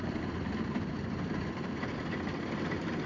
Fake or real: real